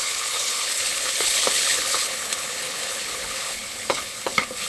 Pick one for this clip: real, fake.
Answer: fake